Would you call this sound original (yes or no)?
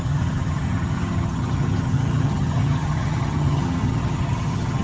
no